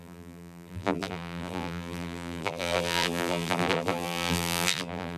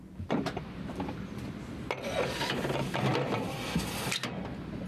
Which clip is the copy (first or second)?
first